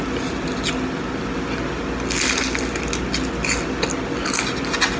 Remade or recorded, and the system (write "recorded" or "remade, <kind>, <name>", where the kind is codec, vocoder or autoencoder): recorded